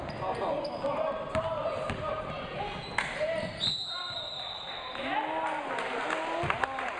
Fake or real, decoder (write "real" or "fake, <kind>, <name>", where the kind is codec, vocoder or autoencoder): real